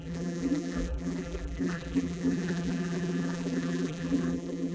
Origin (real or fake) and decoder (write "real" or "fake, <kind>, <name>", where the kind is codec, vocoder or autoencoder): fake, vocoder, BigVGAN v2